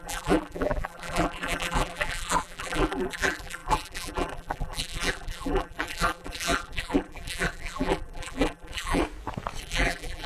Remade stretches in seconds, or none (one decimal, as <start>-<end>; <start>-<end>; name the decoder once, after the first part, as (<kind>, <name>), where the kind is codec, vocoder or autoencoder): 0.0-9.0 (vocoder, BigVGAN v2); 9.6-10.3